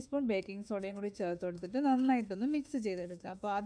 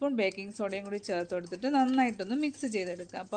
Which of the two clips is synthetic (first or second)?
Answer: first